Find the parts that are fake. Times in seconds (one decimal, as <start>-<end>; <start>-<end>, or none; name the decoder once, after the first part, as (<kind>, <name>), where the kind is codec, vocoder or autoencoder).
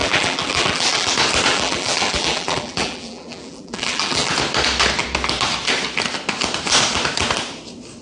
0.0-1.1 (vocoder, BigVGAN v2); 1.5-4.3